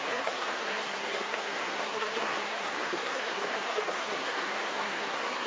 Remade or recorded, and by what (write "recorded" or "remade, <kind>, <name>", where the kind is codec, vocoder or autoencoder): remade, codec, SNAC